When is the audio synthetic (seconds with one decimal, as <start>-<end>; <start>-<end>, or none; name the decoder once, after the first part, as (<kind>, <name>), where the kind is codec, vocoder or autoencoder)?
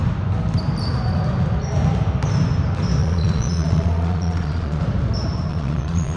3.0-4.8 (vocoder, Vocos); 5.5-6.2